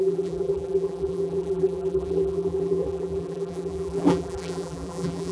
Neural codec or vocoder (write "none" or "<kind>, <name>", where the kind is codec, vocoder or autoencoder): vocoder, BigVGAN v2